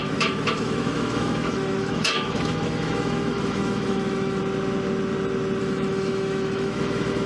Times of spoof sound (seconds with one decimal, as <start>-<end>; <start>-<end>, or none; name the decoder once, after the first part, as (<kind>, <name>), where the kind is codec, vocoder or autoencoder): 0.0-4.4 (autoencoder, DAC-VAE); 5.6-7.3